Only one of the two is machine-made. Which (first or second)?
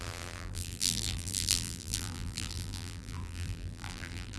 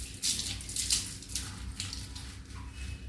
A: first